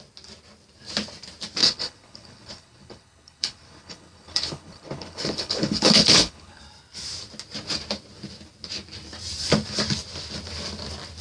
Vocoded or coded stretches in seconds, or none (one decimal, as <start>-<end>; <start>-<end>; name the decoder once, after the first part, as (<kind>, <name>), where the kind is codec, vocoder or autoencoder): 1.6-6.6 (codec, HILCodec)

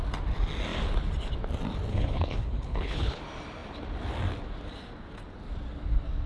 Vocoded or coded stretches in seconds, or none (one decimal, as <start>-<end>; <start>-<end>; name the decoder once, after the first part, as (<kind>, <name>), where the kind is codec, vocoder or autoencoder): 1.9-3.2 (codec, HILCodec)

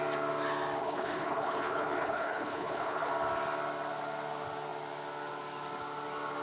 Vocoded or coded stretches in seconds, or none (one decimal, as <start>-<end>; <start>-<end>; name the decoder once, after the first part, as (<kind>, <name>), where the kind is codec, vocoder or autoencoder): 0.8-3.1 (codec, HILCodec)